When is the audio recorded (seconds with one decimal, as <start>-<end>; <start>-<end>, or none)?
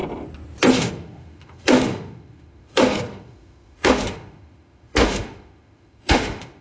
0.0-0.7